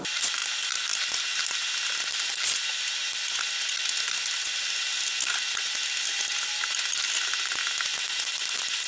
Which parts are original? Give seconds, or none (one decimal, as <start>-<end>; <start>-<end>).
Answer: 0.0-8.9